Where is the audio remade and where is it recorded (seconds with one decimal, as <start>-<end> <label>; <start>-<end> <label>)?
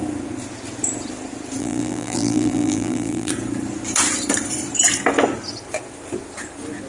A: 0.0-1.6 recorded; 1.6-3.3 remade; 3.3-6.9 recorded